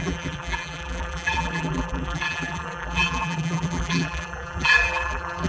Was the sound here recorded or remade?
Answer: remade